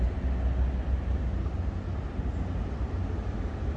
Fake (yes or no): no